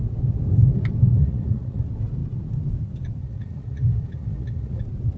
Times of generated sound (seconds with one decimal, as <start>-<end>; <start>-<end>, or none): 1.2-1.8; 3.2-4.8